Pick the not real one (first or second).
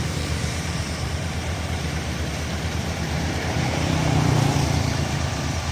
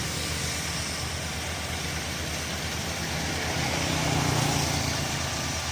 first